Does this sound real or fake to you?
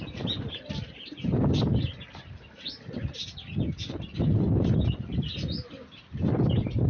real